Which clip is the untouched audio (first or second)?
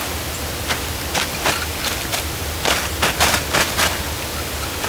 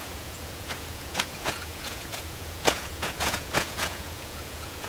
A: first